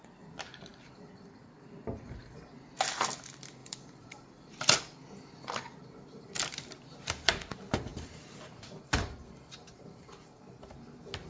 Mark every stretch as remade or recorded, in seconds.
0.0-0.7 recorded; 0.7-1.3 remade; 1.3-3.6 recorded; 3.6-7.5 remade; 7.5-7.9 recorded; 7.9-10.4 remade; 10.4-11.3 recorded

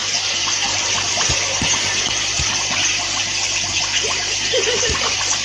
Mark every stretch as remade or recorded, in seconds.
0.0-5.4 remade